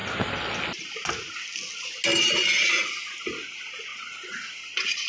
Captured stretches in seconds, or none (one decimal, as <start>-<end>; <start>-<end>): 0.0-5.1